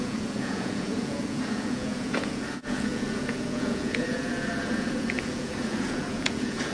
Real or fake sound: fake